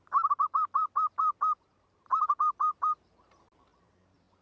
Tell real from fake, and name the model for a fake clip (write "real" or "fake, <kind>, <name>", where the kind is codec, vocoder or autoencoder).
fake, vocoder, BigVGAN v2